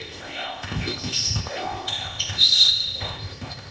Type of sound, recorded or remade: remade